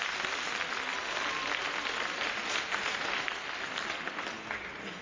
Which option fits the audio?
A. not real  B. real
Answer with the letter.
B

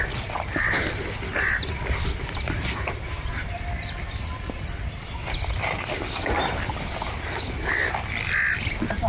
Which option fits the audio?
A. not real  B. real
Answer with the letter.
B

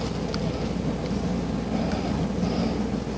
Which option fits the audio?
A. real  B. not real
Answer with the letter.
A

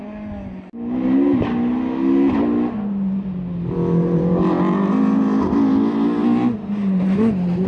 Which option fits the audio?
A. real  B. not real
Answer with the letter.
A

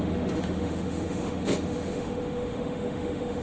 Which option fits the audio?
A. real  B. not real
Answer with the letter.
B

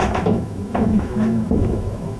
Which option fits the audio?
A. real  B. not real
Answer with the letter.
B